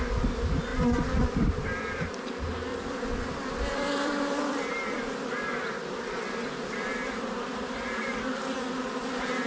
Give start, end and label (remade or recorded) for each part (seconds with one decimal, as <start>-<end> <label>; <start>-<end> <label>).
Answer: 0.0-0.7 recorded; 0.7-2.1 remade; 2.1-2.7 recorded; 2.7-6.9 remade; 6.9-7.5 recorded; 7.5-8.1 remade; 8.1-9.5 recorded